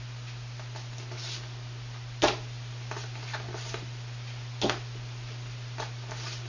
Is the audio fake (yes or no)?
no